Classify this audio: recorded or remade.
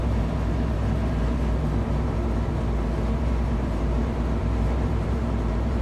remade